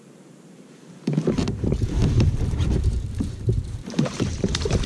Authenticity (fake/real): fake